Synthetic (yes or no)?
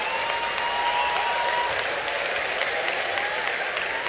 no